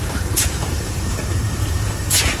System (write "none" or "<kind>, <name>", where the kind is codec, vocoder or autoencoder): vocoder, BigVGAN v2